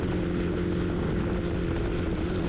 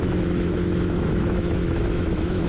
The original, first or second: first